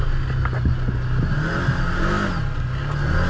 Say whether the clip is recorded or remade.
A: recorded